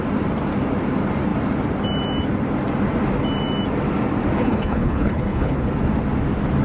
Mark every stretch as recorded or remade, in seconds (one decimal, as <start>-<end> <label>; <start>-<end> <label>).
0.0-4.4 recorded; 4.4-5.7 remade; 5.7-6.6 recorded